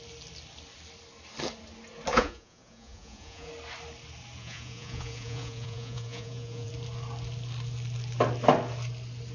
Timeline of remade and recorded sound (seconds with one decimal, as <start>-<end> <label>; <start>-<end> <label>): 0.0-2.1 recorded; 2.1-3.5 remade; 3.5-4.4 recorded; 4.4-6.7 remade; 6.7-9.3 recorded